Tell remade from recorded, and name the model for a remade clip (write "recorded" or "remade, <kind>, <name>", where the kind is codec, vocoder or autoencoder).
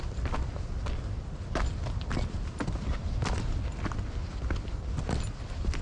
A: recorded